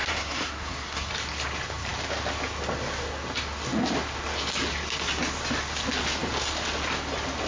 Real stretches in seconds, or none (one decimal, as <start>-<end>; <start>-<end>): 1.1-7.5